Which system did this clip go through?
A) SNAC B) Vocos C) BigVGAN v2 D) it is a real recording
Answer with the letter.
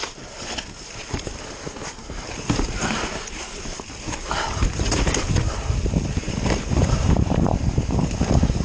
C